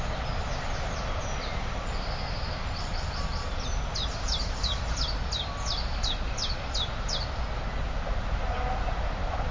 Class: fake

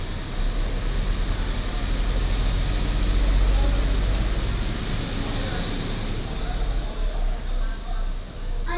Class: real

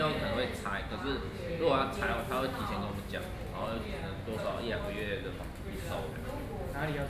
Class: real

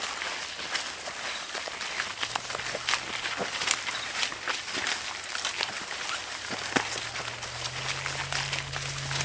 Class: real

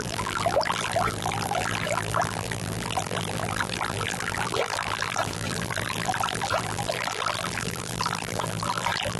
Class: fake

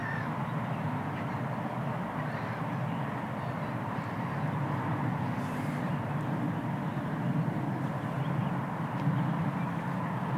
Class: real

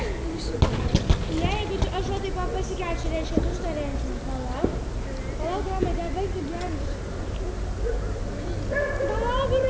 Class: real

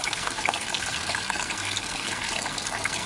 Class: fake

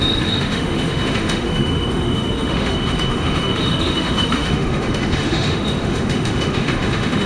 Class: fake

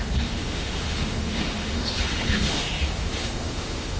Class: fake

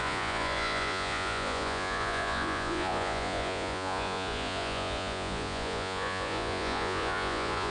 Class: fake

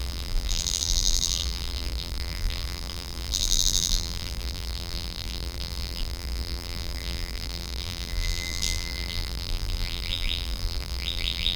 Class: fake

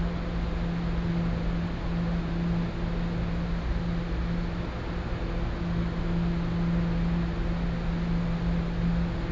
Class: real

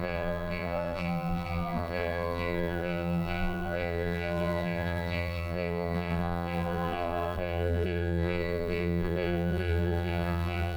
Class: fake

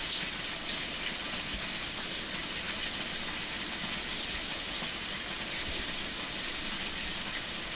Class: real